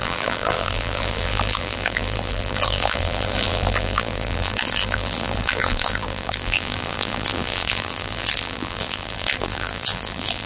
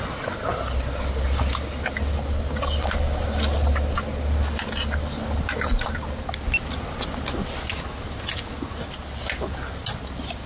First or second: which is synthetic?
first